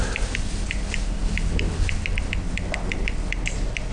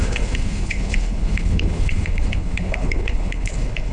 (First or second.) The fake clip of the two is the second